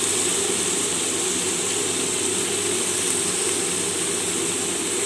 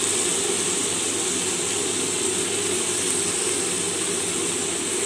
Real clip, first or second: second